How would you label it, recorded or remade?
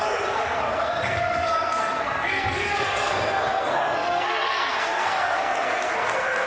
remade